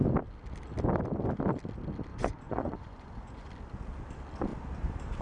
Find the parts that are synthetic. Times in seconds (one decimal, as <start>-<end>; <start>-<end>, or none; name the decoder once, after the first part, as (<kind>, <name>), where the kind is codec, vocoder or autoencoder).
2.1-3.5 (vocoder, Vocos)